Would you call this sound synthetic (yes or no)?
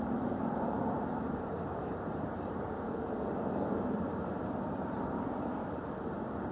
yes